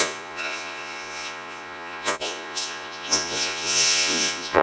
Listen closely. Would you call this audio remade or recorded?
remade